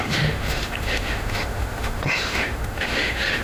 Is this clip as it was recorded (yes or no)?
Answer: no